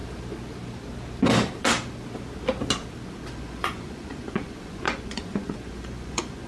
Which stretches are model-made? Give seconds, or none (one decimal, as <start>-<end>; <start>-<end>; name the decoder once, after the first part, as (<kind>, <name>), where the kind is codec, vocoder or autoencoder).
3.3-6.5 (vocoder, Vocos)